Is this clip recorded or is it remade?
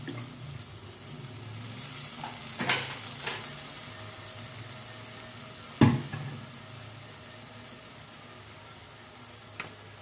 recorded